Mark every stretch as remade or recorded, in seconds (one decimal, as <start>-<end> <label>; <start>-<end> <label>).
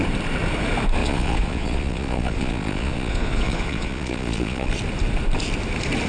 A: 0.0-1.0 recorded; 1.0-4.7 remade; 4.7-6.1 recorded